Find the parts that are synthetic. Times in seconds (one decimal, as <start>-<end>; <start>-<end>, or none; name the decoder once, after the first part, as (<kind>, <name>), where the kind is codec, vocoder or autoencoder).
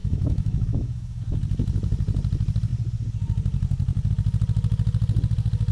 0.0-1.2 (autoencoder, DAC-VAE)